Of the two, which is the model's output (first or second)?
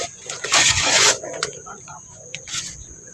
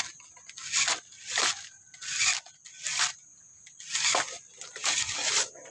first